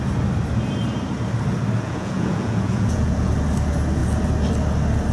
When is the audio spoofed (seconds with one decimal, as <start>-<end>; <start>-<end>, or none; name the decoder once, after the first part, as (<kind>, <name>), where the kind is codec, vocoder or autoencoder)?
1.8-3.3 (vocoder, Vocos)